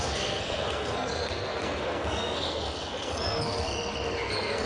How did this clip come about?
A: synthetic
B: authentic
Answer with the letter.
A